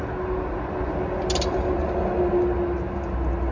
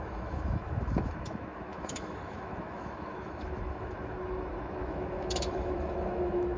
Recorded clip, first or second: first